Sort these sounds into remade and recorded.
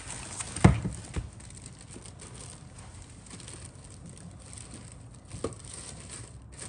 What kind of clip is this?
recorded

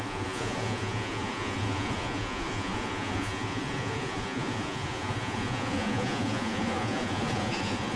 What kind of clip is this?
remade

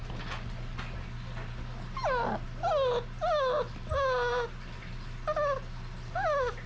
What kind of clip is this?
recorded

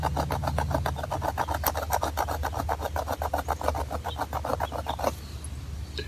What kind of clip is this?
recorded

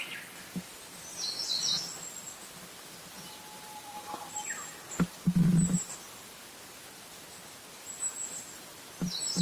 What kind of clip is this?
recorded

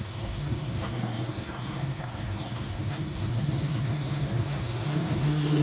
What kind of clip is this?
remade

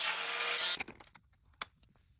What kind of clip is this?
recorded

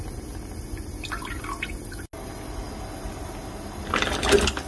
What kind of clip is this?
recorded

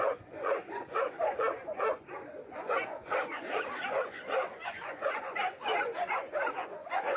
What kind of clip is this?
remade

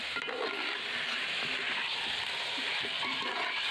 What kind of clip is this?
recorded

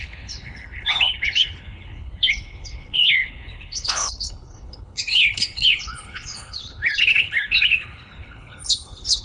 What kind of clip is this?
remade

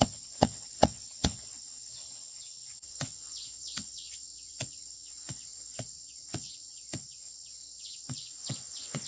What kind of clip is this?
remade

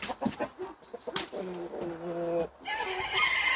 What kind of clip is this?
recorded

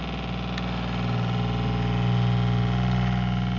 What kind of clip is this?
recorded